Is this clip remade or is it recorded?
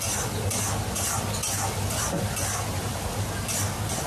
recorded